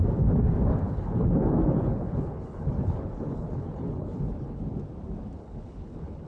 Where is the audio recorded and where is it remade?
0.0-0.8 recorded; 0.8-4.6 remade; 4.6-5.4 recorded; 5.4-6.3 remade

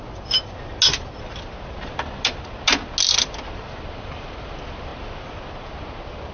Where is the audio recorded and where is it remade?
0.0-6.3 recorded

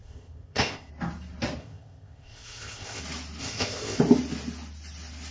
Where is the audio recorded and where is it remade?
0.0-0.9 remade; 0.9-1.6 recorded; 1.6-3.0 remade; 3.0-3.4 recorded; 3.4-4.0 remade; 4.0-5.3 recorded

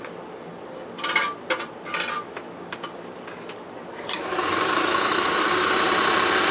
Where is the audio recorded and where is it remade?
0.0-0.5 remade; 0.5-4.4 recorded; 4.4-6.5 remade